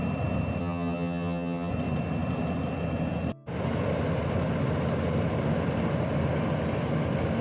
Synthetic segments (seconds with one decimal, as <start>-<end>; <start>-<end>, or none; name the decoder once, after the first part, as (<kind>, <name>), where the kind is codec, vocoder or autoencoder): 0.6-1.7 (vocoder, HiFi-GAN)